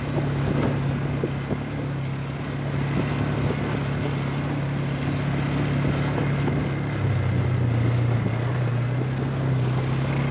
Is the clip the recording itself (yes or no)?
yes